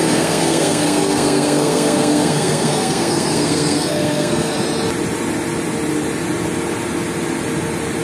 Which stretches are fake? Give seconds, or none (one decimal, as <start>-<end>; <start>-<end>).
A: 0.0-4.5

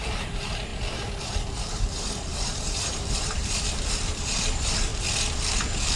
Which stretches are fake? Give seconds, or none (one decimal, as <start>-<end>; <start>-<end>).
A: 0.0-0.7; 1.2-4.9